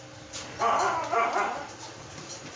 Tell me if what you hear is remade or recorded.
recorded